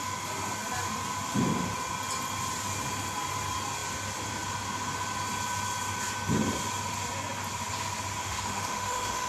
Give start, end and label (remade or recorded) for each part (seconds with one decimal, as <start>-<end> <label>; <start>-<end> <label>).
0.0-8.2 recorded; 8.2-9.3 remade